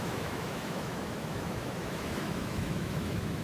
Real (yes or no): no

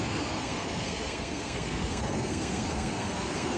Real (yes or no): no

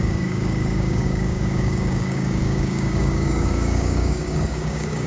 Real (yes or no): no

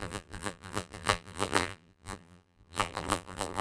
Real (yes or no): no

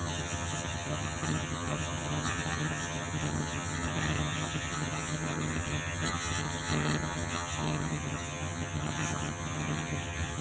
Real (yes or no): no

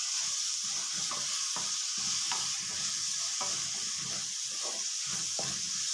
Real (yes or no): yes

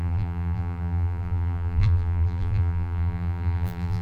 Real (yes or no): no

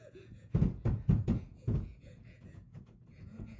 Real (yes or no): no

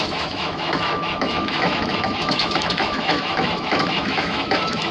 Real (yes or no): no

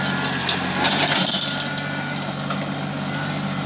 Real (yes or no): yes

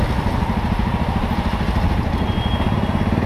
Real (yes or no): yes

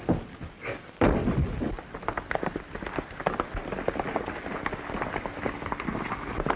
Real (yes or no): yes